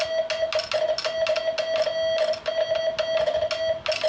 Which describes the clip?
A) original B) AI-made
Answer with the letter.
A